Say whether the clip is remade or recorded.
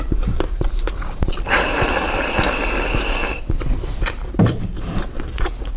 remade